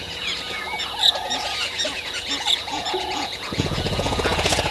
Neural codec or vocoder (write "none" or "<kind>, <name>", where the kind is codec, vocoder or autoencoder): vocoder, Vocos